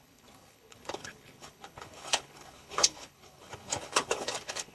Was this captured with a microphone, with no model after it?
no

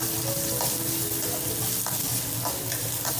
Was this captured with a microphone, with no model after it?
yes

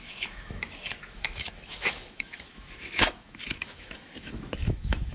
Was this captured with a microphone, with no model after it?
no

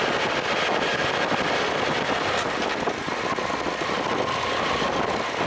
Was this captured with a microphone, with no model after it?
yes